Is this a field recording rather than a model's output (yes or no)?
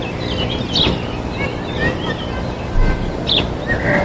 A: yes